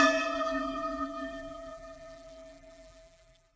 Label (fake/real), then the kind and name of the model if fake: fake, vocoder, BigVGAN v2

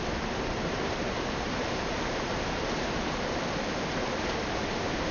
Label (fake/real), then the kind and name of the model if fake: fake, vocoder, BigVGAN v2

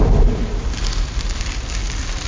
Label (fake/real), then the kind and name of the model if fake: real